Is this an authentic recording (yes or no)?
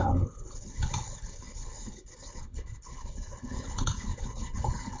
no